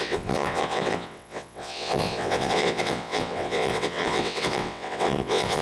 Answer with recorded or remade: remade